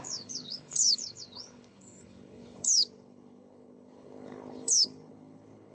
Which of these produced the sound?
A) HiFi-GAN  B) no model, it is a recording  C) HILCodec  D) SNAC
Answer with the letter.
C